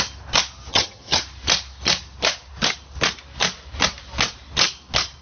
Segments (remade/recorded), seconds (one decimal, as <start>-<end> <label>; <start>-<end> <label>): 0.0-0.7 recorded; 0.7-1.2 remade; 1.2-5.2 recorded